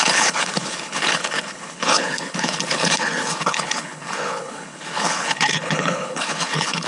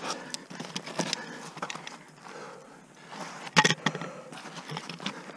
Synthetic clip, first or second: first